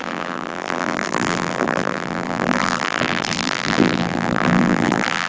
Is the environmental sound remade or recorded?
remade